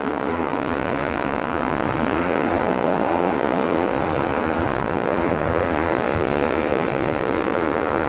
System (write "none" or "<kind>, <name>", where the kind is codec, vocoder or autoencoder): vocoder, Vocos